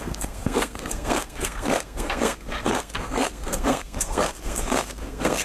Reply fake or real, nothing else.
fake